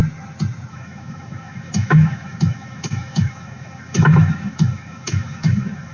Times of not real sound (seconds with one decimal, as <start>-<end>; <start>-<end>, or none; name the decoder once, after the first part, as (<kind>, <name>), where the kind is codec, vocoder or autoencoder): 0.7-5.9 (autoencoder, DAC-VAE)